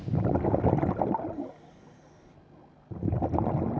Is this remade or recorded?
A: recorded